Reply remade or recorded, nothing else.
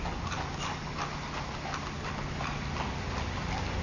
recorded